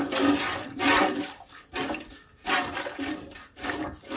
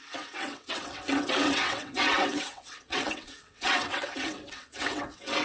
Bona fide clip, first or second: first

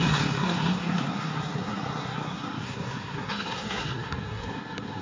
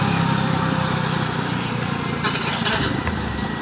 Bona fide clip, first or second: second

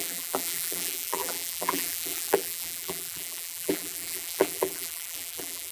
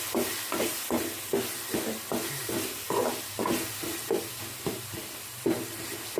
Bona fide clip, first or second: second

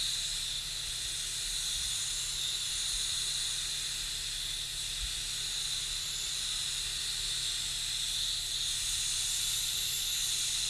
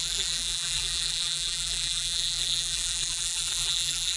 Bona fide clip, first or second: first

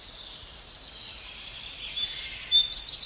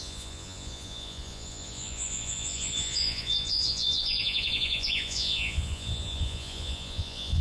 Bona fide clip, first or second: first